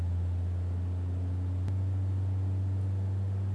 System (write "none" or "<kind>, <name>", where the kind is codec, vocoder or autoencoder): none